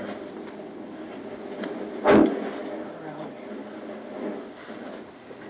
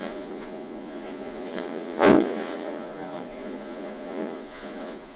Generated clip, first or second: second